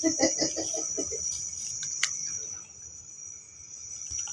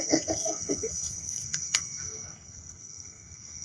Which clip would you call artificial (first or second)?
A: second